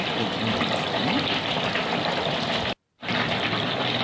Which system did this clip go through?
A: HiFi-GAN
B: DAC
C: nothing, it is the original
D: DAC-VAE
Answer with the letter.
C